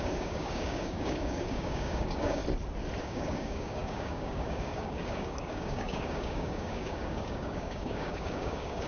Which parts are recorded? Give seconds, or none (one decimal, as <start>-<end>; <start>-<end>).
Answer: 2.4-3.0